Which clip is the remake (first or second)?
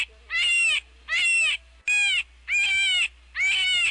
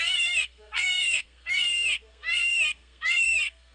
second